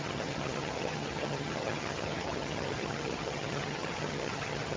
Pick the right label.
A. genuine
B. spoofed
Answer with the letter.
B